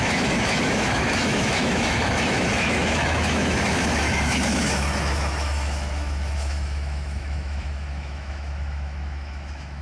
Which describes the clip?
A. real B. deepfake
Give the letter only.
B